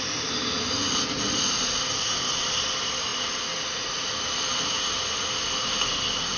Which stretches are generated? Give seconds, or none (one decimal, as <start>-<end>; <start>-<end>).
none